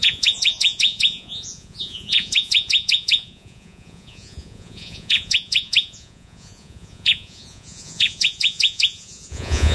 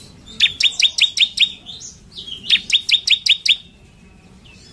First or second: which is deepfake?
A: first